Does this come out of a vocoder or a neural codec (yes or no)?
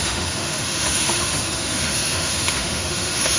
yes